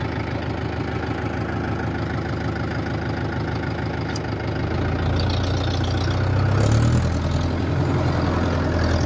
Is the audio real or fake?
real